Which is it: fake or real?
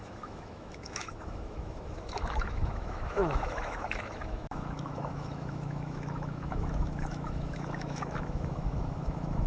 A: fake